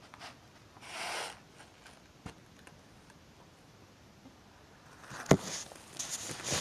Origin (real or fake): real